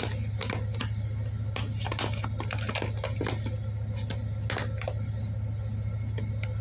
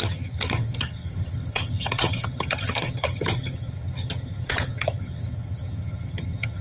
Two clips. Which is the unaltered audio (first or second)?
first